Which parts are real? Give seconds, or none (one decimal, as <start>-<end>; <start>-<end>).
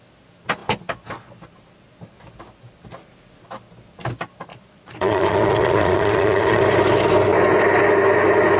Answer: 0.0-4.5; 6.6-8.6